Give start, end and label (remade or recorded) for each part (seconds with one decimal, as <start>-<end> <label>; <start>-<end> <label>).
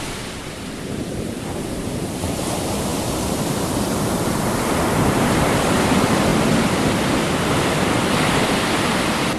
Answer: 0.0-9.4 remade